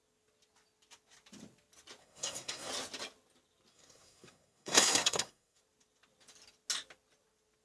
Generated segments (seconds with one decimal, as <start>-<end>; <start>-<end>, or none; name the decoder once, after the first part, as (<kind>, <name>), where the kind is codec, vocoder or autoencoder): 2.0-2.7 (codec, SNAC); 3.7-5.6